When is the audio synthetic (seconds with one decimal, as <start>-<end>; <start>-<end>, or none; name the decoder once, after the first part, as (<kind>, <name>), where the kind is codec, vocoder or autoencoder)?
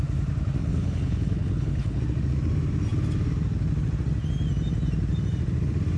0.6-2.0 (codec, HILCodec)